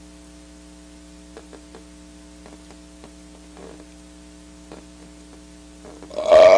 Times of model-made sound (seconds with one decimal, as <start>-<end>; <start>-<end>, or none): none